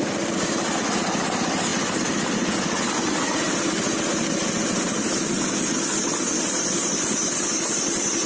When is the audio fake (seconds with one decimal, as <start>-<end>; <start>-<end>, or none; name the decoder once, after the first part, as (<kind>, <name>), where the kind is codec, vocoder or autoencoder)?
none

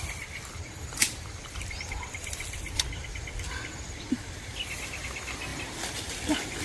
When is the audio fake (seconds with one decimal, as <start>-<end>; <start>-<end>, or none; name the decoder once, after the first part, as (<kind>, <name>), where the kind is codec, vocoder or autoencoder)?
1.0-1.8 (vocoder, BigVGAN v2)